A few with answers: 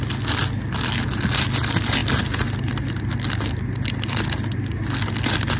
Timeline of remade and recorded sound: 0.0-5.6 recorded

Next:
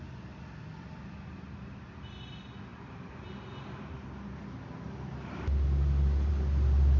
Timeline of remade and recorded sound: 0.0-7.0 recorded